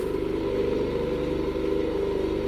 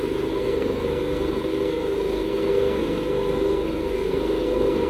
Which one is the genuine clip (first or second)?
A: first